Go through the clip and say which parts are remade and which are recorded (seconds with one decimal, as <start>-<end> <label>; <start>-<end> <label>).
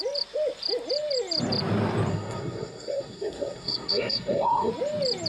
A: 0.0-2.1 recorded; 2.1-4.7 remade; 4.7-5.3 recorded